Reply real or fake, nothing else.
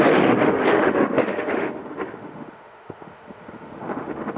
fake